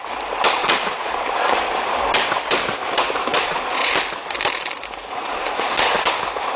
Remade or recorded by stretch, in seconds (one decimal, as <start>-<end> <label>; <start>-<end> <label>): 0.0-0.6 recorded; 0.6-1.7 remade; 1.7-3.3 recorded; 3.3-4.0 remade; 4.0-5.2 recorded; 5.2-6.1 remade; 6.1-6.6 recorded

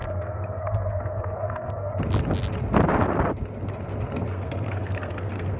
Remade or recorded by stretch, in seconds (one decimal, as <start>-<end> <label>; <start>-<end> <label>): 0.0-1.9 remade; 1.9-4.3 recorded; 4.3-5.6 remade

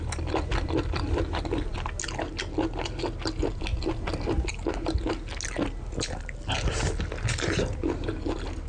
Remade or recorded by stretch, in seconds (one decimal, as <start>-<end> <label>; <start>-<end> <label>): 0.0-8.7 recorded

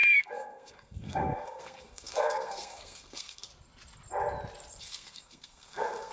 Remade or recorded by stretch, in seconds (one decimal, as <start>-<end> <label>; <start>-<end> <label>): 0.0-3.5 remade; 3.5-4.8 recorded; 4.8-6.1 remade

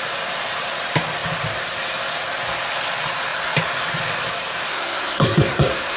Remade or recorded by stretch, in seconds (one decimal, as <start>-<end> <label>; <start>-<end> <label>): 0.0-4.7 recorded; 4.7-6.0 remade

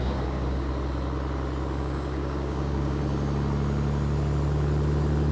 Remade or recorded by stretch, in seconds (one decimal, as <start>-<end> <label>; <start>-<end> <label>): 0.0-0.7 remade; 0.7-1.8 recorded; 1.8-3.0 remade; 3.0-5.3 recorded

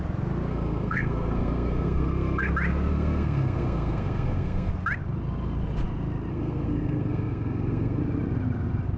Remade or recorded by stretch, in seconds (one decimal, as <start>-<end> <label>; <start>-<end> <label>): 0.0-0.5 recorded; 0.5-2.5 remade; 2.5-2.9 recorded; 2.9-4.7 remade; 4.7-6.3 recorded; 6.3-8.0 remade; 8.0-9.0 recorded